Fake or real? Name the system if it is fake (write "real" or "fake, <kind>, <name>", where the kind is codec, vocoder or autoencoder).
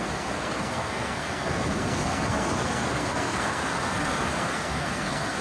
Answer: fake, codec, SNAC